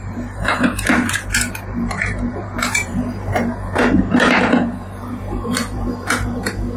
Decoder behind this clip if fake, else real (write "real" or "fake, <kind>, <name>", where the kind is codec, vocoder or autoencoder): fake, vocoder, BigVGAN v2